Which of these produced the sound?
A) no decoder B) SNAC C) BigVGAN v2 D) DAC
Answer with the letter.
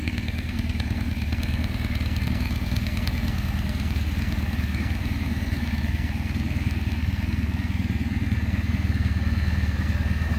B